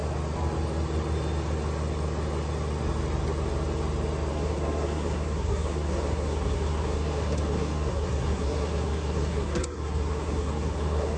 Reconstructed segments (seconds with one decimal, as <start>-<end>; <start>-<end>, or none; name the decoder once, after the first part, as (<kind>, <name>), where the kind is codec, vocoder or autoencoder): 4.3-11.2 (codec, SNAC)